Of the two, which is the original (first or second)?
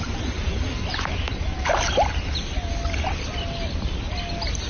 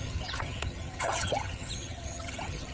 first